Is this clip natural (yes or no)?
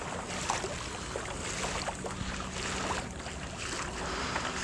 yes